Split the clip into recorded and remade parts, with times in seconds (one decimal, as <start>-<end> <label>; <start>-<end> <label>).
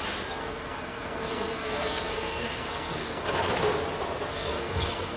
0.0-0.4 recorded; 0.4-3.5 remade; 3.5-4.3 recorded; 4.3-5.2 remade